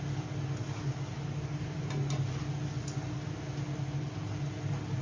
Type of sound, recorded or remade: recorded